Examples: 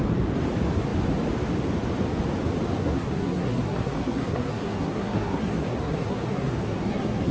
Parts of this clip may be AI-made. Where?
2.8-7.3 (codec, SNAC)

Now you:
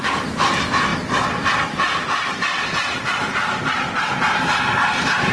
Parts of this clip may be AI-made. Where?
none

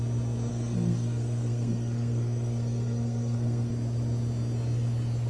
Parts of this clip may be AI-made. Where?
0.5-3.7 (codec, SNAC)

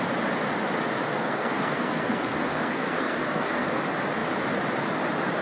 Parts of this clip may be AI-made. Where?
1.1-3.8 (codec, SNAC)

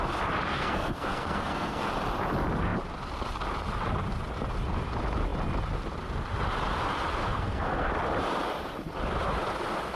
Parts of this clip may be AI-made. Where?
0.5-1.9 (codec, SNAC); 7.2-7.9

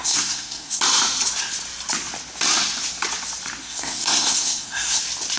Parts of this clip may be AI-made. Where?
0.0-0.8 (codec, SNAC); 3.6-5.0

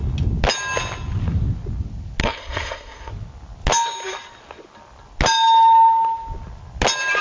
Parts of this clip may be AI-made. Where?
2.2-3.1 (codec, SNAC)